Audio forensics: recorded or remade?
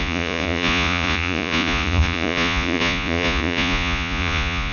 remade